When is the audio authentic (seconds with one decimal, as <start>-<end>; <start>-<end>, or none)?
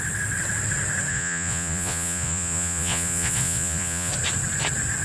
0.0-1.1; 4.1-5.0